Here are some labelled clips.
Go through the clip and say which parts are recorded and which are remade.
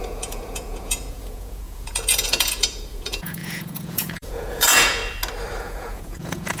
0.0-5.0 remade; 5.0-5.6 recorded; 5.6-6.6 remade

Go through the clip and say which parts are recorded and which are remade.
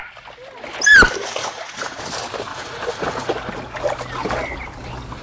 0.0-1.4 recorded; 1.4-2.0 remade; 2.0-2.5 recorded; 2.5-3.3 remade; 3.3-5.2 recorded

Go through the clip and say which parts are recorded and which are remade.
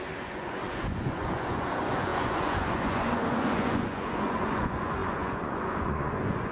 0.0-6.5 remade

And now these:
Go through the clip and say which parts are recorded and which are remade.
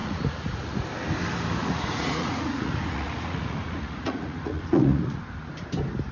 0.0-0.9 remade; 0.9-1.6 recorded; 1.6-5.2 remade; 5.2-6.1 recorded